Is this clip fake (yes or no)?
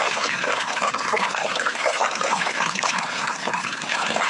yes